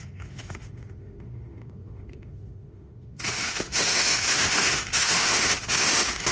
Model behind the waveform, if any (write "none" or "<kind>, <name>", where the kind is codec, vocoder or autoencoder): autoencoder, DAC-VAE